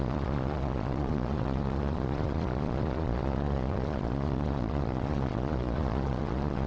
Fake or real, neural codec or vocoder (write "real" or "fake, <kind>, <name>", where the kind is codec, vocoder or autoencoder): fake, vocoder, Vocos